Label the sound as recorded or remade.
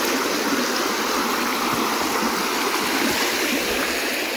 recorded